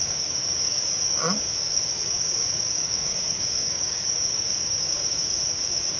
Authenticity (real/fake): fake